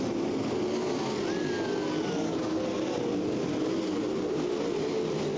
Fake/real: real